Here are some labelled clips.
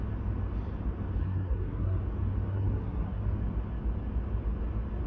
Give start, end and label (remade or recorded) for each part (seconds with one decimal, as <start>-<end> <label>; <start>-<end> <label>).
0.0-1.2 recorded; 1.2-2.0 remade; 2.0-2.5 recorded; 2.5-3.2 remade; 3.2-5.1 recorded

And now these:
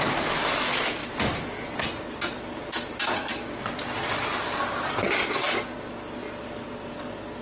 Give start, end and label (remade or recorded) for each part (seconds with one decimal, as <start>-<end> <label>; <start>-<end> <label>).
0.0-1.0 recorded; 1.0-5.1 remade; 5.1-7.4 recorded

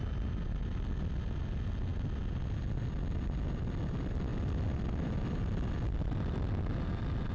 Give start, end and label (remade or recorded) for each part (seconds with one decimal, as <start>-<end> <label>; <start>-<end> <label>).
0.0-7.3 recorded

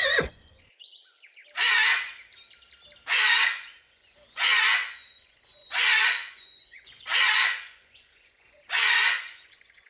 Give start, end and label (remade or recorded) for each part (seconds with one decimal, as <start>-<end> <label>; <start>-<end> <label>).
0.0-1.4 remade; 1.4-3.1 recorded; 3.1-9.9 remade

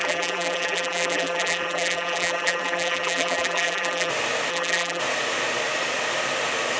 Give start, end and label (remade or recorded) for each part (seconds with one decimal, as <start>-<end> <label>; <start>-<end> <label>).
0.0-4.1 remade; 4.1-4.5 recorded; 4.5-5.0 remade; 5.0-6.8 recorded

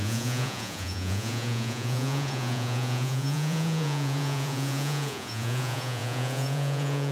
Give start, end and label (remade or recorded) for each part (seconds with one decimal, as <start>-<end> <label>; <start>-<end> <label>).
0.0-7.1 remade

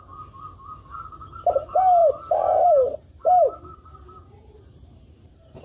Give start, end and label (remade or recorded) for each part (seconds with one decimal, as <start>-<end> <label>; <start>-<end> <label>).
0.0-2.0 recorded; 2.0-5.6 remade

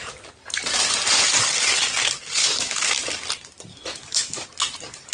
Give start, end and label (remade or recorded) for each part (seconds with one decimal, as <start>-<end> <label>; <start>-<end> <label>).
0.0-2.4 recorded; 2.4-2.9 remade; 2.9-3.7 recorded; 3.7-4.5 remade; 4.5-5.1 recorded